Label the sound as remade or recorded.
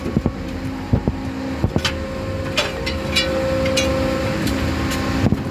recorded